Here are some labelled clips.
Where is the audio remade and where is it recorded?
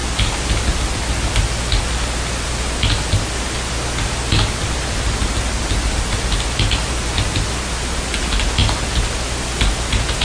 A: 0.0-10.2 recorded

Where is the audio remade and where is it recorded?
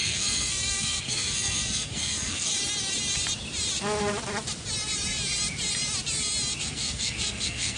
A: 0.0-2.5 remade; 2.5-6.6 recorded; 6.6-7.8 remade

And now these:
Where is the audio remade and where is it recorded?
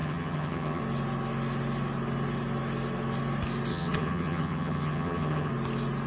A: 0.0-0.8 remade; 0.8-3.7 recorded; 3.7-5.5 remade; 5.5-6.1 recorded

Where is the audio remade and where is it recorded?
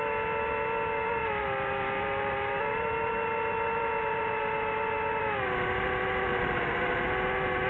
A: 0.0-1.2 recorded; 1.2-5.2 remade; 5.2-6.3 recorded; 6.3-7.0 remade; 7.0-7.7 recorded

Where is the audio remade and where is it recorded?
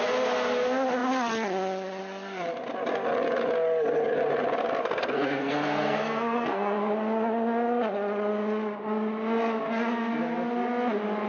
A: 0.0-4.8 recorded; 4.8-6.9 remade; 6.9-11.3 recorded